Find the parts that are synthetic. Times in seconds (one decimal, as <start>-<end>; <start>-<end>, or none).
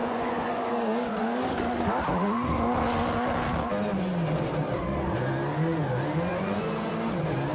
0.0-0.7; 6.3-6.9